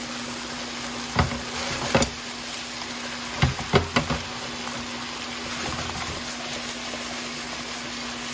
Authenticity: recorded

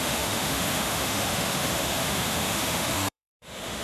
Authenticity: remade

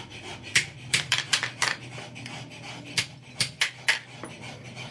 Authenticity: recorded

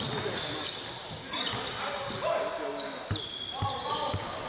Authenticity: recorded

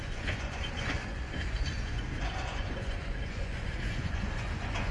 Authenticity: remade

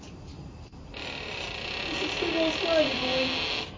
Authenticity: recorded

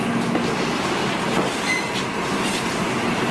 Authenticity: recorded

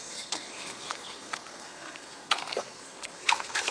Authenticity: remade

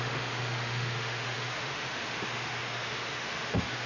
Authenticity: remade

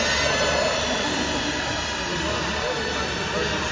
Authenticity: recorded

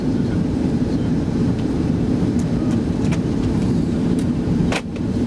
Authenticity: remade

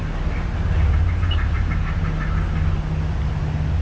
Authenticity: recorded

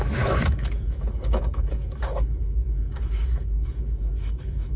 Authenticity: remade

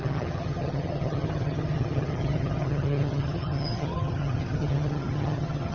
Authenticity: remade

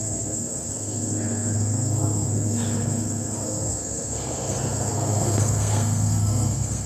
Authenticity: remade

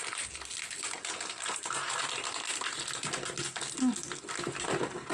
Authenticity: recorded